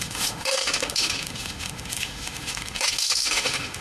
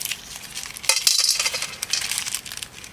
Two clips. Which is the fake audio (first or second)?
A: first